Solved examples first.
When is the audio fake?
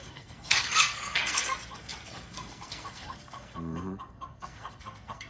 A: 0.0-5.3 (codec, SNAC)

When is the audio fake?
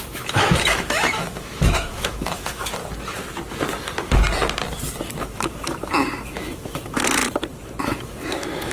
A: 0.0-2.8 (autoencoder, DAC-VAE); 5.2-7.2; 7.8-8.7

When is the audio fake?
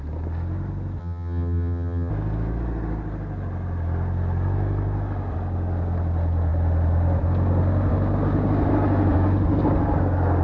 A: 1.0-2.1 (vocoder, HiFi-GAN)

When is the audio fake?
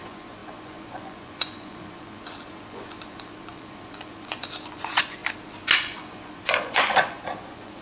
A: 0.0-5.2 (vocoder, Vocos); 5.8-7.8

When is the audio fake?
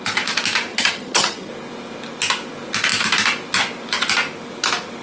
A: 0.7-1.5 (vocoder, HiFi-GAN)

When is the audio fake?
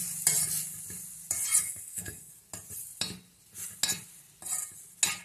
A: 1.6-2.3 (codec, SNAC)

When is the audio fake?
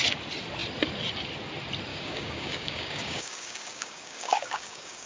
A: 1.9-5.1 (codec, DAC)